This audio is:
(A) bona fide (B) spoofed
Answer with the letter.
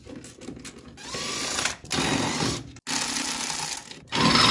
A